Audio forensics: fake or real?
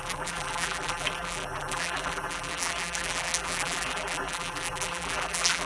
fake